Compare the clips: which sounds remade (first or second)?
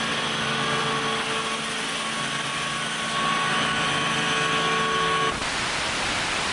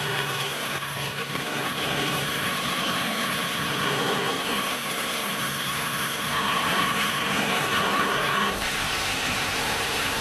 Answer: second